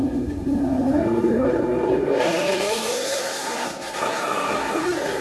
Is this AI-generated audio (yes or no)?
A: yes